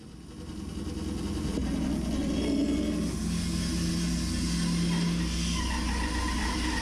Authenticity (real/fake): real